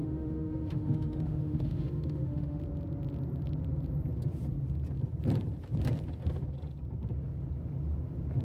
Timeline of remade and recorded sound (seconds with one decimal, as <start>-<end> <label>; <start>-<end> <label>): 0.0-2.6 remade; 2.6-8.4 recorded